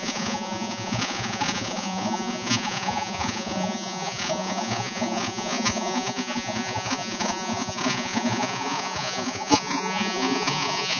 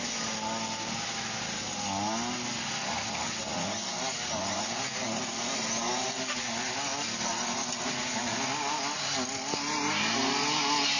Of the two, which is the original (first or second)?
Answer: second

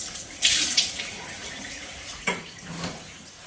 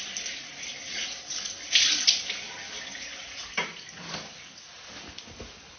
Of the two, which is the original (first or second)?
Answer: second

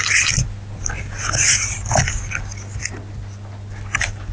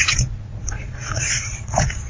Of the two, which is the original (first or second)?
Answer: first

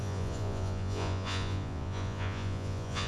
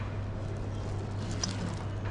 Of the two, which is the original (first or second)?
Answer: second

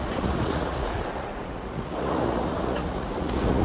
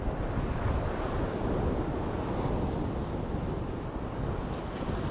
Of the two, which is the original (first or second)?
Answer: second